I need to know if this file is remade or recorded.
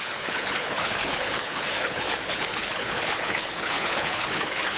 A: remade